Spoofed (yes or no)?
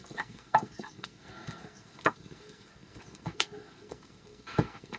yes